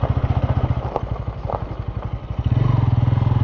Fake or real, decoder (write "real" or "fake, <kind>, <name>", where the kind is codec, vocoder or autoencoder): real